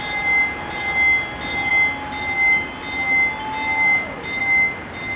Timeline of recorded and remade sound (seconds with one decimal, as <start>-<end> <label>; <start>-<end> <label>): 0.0-5.2 recorded